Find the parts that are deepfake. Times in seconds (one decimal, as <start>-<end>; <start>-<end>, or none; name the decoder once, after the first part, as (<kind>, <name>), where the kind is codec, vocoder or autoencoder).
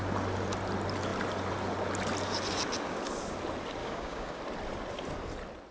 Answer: 3.8-4.4 (codec, DAC)